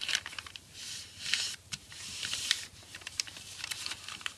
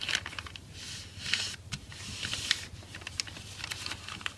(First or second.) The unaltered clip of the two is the second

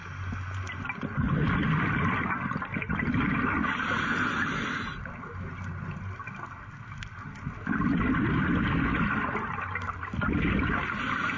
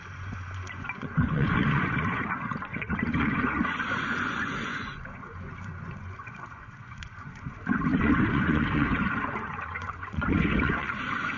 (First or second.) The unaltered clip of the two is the first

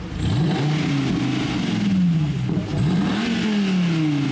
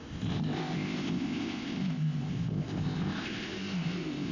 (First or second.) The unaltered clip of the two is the first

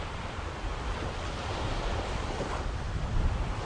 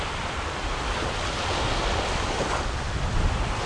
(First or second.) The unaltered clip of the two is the second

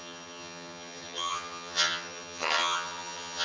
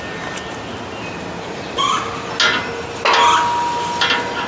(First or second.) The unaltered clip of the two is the second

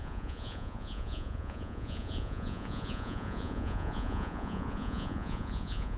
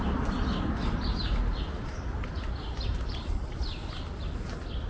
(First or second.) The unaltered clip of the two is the second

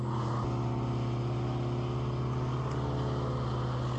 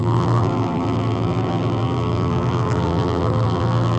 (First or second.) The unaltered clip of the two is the first